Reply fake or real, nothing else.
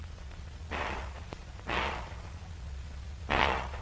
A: fake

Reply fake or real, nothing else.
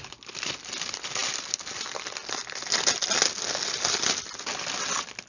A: real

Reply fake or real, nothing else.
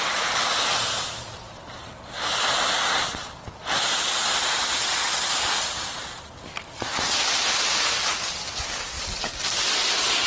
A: real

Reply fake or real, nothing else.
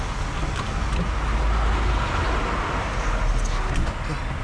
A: real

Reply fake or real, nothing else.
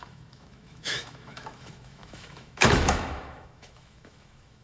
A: fake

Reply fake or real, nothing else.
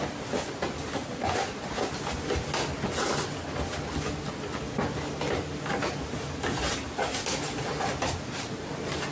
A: real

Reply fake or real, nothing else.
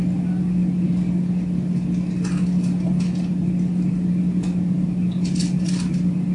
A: real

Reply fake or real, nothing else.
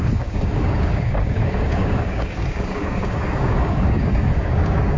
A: fake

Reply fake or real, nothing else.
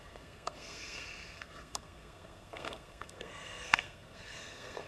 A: fake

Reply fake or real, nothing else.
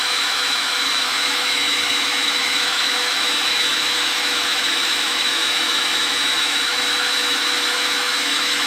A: fake